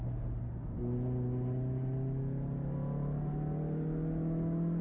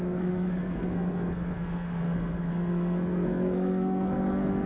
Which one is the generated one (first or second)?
second